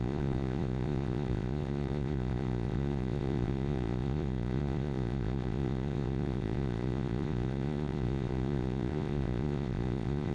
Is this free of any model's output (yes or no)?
no